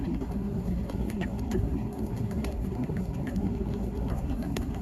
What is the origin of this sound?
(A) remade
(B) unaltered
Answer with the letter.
A